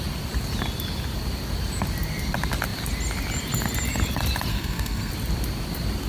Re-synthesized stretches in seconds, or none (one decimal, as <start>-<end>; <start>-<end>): 4.5-5.1